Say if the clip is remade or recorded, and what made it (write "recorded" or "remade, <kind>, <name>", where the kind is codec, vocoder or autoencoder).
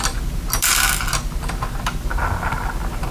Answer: recorded